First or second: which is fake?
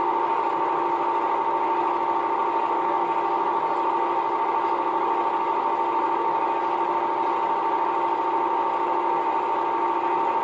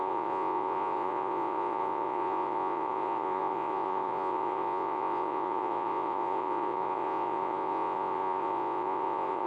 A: second